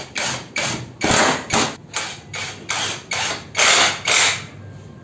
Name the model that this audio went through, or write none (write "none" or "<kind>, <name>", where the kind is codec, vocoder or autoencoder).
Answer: none